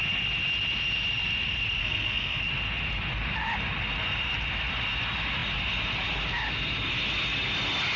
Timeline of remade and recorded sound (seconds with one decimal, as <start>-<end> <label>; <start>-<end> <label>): 0.0-1.8 recorded; 1.8-2.4 remade; 2.4-8.0 recorded